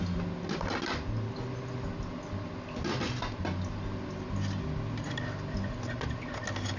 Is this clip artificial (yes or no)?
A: no